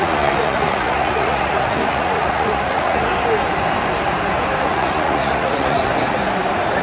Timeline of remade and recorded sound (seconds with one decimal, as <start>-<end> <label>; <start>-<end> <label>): 0.0-3.1 remade; 3.1-4.6 recorded; 4.6-5.9 remade; 5.9-6.8 recorded